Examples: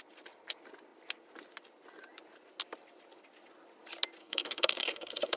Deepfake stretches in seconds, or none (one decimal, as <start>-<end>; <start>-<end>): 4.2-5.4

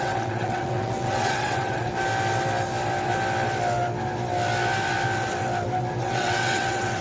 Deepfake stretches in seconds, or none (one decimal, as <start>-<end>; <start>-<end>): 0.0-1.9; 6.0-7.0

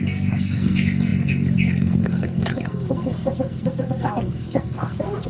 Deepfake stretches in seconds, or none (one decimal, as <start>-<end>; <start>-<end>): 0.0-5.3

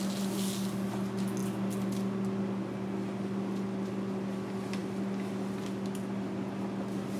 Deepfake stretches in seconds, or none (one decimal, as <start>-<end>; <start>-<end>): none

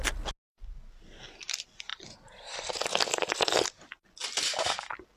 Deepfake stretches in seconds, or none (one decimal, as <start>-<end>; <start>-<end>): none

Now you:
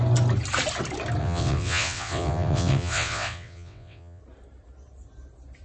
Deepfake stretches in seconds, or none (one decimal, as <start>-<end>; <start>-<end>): 1.2-4.2

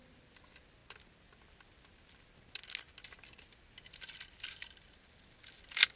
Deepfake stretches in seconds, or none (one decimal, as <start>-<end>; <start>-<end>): none